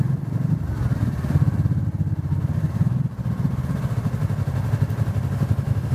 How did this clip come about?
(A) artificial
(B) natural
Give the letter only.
B